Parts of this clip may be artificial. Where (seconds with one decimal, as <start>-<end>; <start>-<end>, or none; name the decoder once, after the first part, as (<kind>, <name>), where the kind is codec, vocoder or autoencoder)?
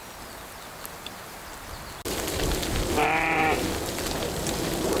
none